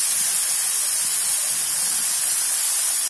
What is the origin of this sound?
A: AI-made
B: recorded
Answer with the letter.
B